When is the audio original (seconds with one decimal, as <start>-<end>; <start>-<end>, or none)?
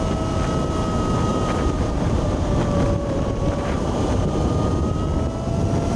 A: 0.0-1.3; 4.9-6.0